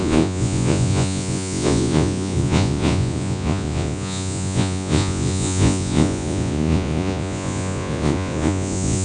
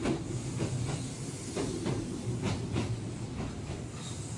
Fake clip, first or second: first